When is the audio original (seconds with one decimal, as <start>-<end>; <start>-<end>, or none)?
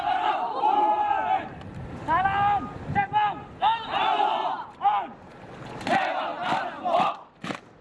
0.0-7.8